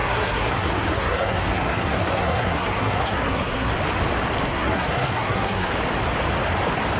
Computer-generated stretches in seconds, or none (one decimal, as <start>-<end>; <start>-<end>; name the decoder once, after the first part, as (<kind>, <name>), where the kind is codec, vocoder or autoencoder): 0.0-3.7 (codec, SNAC); 4.5-5.7